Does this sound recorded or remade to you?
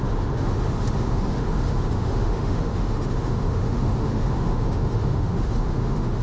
remade